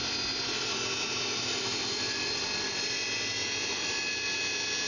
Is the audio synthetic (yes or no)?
no